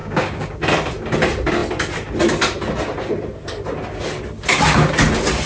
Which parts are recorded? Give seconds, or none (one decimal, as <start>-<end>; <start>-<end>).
0.6-5.5